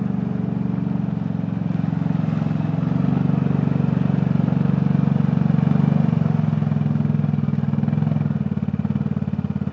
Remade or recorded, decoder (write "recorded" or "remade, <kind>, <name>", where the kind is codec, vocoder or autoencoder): recorded